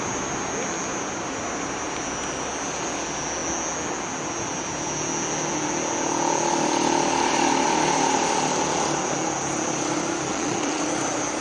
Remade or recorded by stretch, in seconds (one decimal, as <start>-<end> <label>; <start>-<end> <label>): 0.0-10.3 recorded; 10.3-10.8 remade; 10.8-11.4 recorded